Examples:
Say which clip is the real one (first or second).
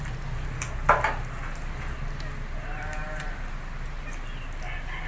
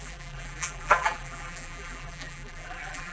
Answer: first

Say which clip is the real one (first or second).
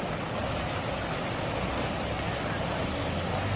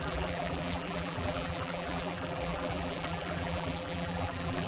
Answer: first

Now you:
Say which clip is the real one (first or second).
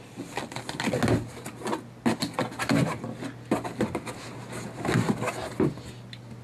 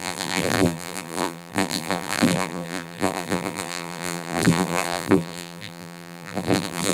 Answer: first